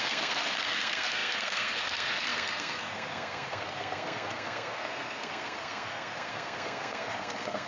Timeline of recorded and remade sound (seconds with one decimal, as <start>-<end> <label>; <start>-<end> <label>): 0.0-7.7 remade